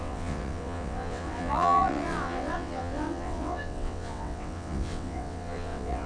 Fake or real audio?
fake